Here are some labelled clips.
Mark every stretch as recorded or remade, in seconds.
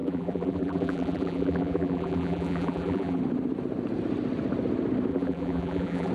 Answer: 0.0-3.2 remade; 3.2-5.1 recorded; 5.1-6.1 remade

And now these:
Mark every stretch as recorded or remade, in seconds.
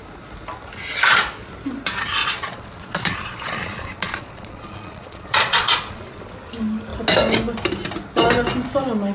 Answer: 0.0-2.2 recorded; 2.2-6.2 remade; 6.2-9.1 recorded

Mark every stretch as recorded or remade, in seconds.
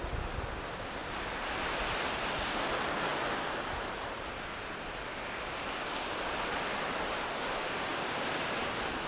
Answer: 0.0-9.1 recorded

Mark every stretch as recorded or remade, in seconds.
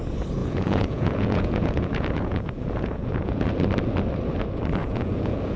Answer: 0.0-0.4 recorded; 0.4-3.5 remade; 3.5-4.8 recorded; 4.8-5.6 remade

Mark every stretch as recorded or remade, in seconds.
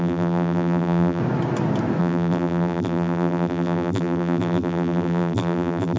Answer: 0.0-1.2 remade; 1.2-2.0 recorded; 2.0-6.0 remade